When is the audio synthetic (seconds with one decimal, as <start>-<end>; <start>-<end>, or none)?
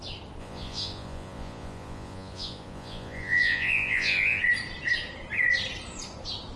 0.4-4.4